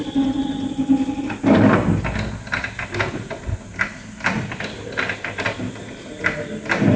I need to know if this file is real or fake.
real